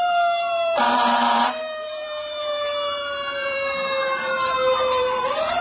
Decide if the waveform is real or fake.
fake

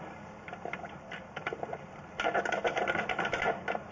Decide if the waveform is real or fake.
real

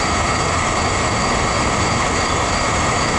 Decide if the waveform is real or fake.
real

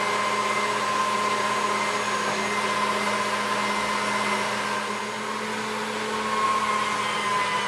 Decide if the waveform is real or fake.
real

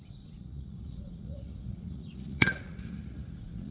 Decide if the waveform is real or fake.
fake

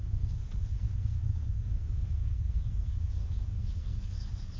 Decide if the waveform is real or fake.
fake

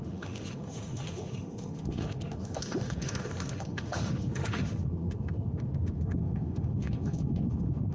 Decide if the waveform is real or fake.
fake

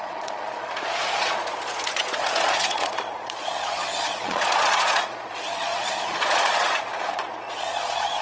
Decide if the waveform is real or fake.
fake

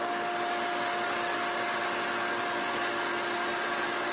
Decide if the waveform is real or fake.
real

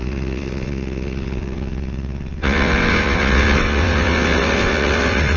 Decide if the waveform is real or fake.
fake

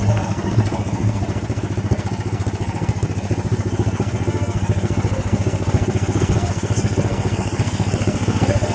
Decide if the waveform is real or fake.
fake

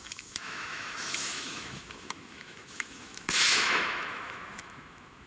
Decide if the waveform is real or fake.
fake